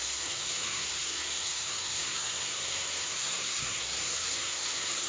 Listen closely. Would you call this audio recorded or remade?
remade